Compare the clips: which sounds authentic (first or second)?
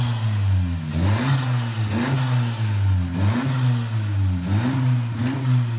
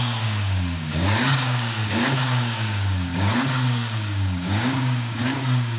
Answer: first